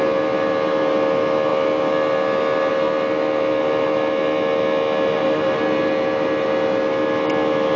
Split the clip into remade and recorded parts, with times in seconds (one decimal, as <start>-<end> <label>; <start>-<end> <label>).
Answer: 0.0-7.8 recorded